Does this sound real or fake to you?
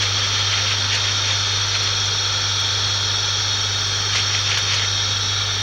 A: real